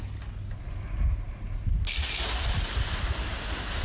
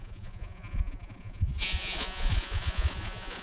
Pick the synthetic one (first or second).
second